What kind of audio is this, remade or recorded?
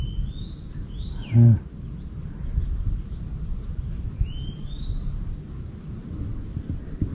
recorded